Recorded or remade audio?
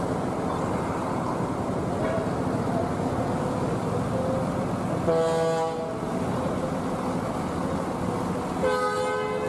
recorded